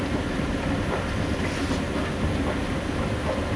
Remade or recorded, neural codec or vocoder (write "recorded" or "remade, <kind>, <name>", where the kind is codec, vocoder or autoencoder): recorded